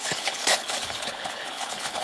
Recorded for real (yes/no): no